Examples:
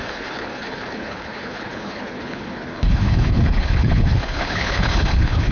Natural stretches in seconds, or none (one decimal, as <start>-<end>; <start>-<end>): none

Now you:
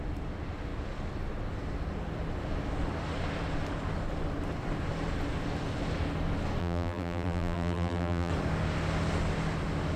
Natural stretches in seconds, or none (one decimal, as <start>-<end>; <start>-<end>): 0.0-6.6; 8.3-10.0

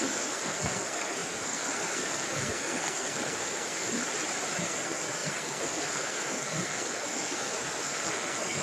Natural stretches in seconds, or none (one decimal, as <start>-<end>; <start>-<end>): 4.0-4.6

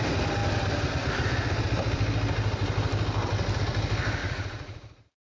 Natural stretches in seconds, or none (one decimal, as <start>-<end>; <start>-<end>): 0.0-4.2